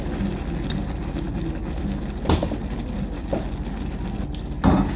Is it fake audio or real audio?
real